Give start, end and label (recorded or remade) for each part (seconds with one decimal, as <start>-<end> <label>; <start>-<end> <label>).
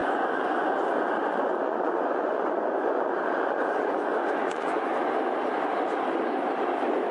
0.0-4.9 remade; 4.9-7.1 recorded